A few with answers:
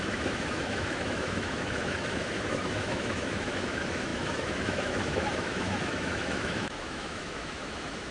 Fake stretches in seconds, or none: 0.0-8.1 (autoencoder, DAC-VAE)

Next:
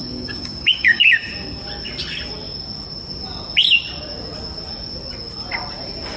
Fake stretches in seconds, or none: 0.0-1.1 (codec, DAC)

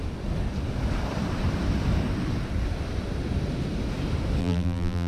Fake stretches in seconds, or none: 4.4-5.1 (vocoder, BigVGAN v2)

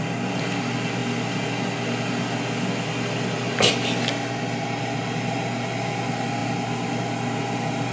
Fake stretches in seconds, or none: none